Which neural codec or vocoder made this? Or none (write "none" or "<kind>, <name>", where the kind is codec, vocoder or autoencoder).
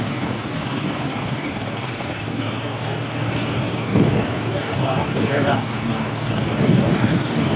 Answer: codec, DAC